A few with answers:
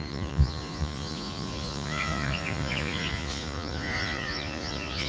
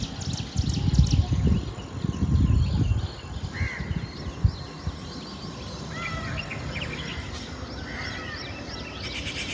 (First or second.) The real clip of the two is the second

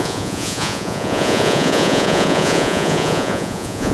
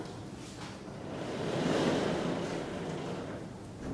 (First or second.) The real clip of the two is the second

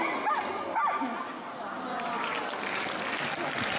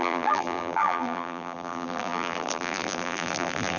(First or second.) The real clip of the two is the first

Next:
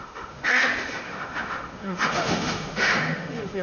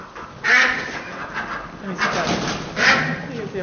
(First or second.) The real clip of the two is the second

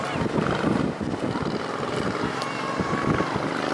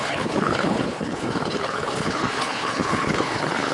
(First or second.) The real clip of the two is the first